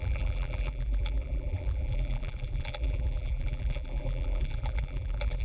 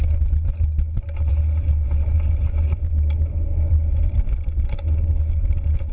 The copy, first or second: first